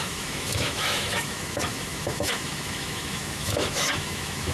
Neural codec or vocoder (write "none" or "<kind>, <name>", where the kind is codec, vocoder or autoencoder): autoencoder, DAC-VAE